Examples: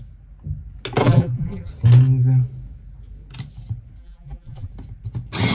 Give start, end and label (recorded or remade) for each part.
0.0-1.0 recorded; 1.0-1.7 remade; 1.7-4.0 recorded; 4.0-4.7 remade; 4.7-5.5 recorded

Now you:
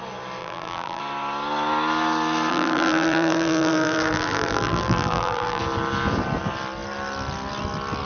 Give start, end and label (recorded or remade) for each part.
0.0-0.4 recorded; 0.4-1.0 remade; 1.0-2.5 recorded; 2.5-5.6 remade; 5.6-8.1 recorded